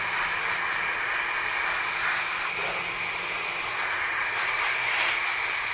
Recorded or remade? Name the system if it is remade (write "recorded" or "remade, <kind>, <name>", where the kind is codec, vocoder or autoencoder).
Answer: recorded